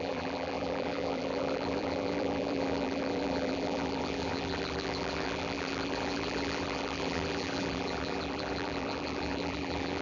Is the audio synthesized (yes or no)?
yes